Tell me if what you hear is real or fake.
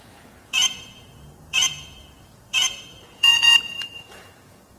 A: fake